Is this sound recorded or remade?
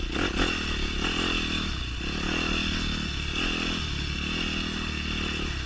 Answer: recorded